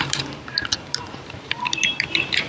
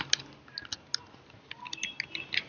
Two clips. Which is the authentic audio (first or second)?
second